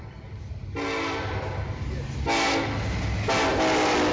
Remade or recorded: recorded